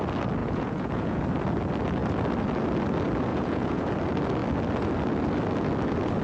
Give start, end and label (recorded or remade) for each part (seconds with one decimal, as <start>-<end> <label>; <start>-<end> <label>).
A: 0.0-0.4 recorded; 0.4-1.2 remade; 1.2-3.3 recorded; 3.3-3.9 remade; 3.9-6.2 recorded